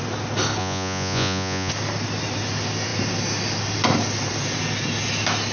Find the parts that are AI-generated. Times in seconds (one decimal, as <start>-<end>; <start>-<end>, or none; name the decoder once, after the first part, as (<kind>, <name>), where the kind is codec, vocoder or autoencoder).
0.6-1.7 (vocoder, Vocos)